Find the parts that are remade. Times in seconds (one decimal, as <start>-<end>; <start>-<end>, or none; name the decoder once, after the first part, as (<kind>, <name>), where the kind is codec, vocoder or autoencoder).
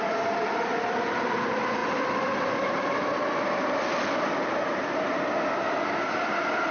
none